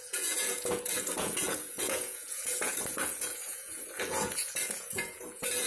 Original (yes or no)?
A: no